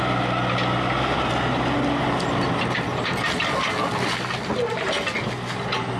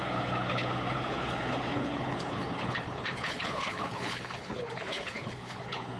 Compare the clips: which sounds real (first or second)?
first